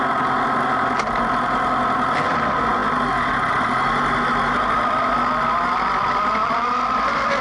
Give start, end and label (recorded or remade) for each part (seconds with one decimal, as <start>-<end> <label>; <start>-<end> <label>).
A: 0.0-7.4 recorded